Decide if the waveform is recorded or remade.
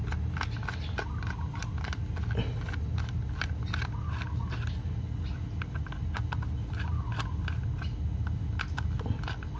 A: recorded